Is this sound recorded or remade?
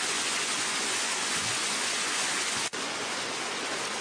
remade